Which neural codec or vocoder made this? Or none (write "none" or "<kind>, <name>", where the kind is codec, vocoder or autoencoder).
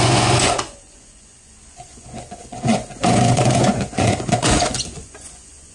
vocoder, Vocos